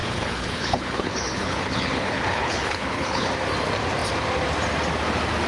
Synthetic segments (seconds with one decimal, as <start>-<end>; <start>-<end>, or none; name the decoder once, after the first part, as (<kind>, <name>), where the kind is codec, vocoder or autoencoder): 0.0-3.3 (codec, HILCodec)